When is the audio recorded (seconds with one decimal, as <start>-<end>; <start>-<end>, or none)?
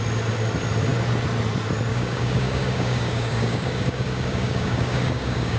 0.0-1.9